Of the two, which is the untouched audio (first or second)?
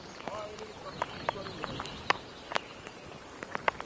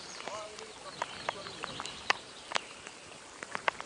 first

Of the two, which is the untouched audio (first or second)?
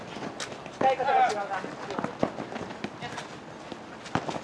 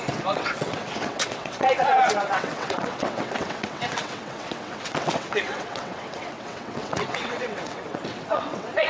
first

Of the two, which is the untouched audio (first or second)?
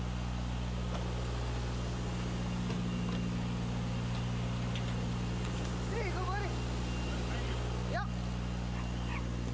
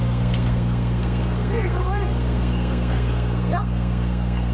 first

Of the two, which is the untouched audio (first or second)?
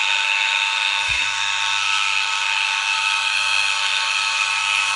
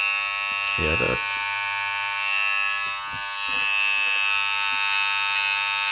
second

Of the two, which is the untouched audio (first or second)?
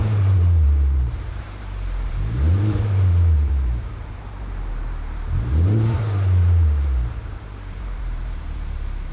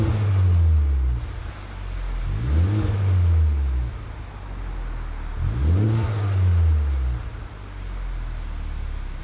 second